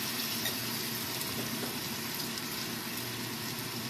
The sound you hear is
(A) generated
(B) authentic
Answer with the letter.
B